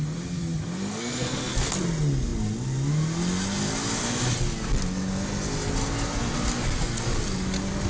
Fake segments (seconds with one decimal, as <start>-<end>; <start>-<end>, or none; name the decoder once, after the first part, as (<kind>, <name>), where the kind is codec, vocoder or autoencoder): 0.9-1.7 (codec, SNAC)